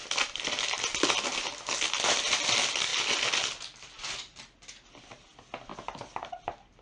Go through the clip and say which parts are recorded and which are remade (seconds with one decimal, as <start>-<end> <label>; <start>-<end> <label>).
0.0-2.9 remade; 2.9-3.6 recorded; 3.6-5.7 remade; 5.7-6.3 recorded; 6.3-6.8 remade